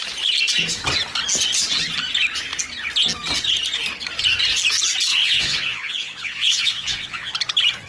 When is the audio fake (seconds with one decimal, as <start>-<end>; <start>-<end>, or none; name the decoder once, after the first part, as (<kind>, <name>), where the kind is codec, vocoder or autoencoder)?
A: 5.1-7.3 (vocoder, Vocos)